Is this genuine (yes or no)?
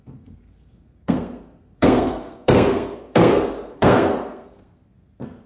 no